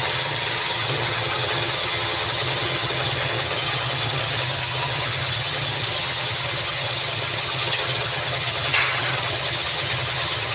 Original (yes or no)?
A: no